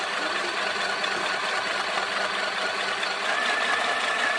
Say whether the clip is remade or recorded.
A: recorded